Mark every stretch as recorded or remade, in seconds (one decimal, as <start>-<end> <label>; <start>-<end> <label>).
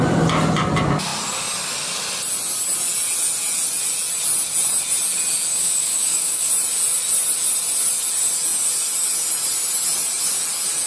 0.0-5.5 recorded; 5.5-6.5 remade; 6.5-10.9 recorded